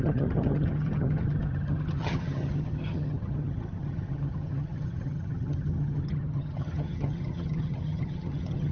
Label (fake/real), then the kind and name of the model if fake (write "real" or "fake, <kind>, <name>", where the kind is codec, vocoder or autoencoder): fake, vocoder, HiFi-GAN